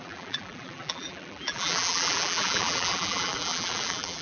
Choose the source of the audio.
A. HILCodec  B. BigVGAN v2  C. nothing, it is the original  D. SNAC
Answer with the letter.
B